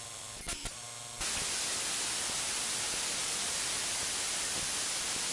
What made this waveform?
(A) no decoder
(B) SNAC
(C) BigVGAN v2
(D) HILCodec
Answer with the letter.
A